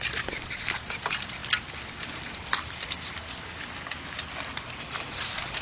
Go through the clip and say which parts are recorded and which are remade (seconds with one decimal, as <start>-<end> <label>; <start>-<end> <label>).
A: 0.0-1.4 remade; 1.4-4.7 recorded; 4.7-5.6 remade